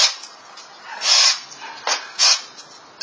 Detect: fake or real real